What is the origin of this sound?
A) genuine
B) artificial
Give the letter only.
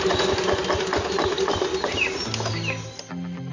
A